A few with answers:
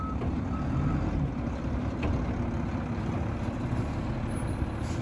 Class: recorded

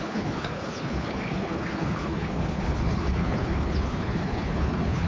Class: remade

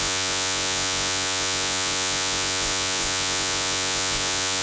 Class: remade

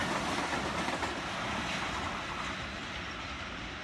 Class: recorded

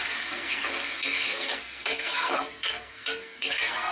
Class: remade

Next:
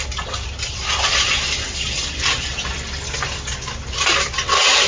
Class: recorded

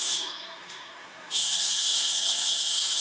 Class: remade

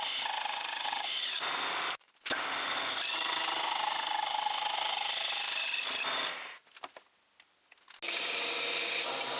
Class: recorded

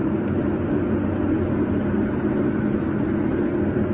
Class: recorded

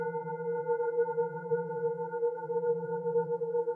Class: remade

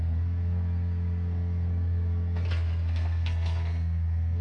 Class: remade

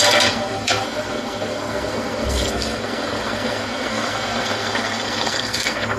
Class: remade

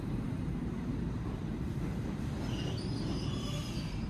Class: remade